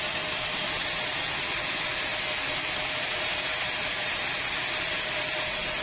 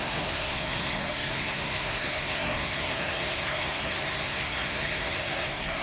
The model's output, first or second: second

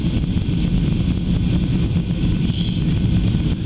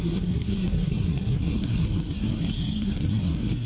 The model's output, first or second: second